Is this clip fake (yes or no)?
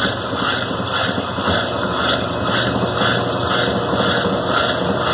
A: no